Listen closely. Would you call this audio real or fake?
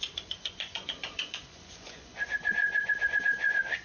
fake